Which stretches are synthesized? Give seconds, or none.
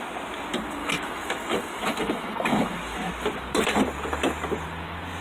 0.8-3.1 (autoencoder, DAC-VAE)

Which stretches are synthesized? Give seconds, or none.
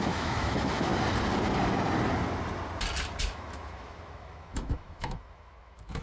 0.0-0.9 (autoencoder, DAC-VAE); 3.2-6.0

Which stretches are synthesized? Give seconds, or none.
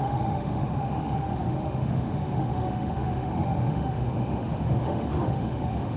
0.0-6.0 (autoencoder, DAC-VAE)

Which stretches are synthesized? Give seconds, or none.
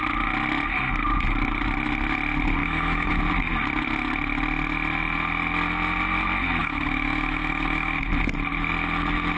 2.6-3.2 (autoencoder, DAC-VAE); 6.6-8.1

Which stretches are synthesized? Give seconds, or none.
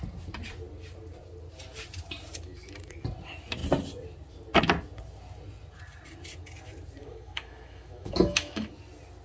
7.0-8.7 (autoencoder, DAC-VAE)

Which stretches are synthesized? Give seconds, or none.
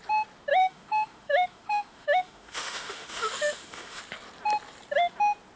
0.6-4.0 (autoencoder, DAC-VAE)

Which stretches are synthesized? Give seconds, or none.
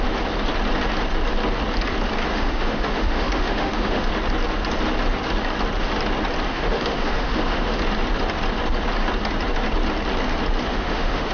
2.3-4.1 (autoencoder, DAC-VAE); 6.5-7.8; 10.7-11.3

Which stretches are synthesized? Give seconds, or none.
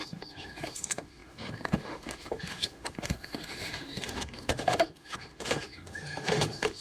0.0-6.8 (autoencoder, DAC-VAE)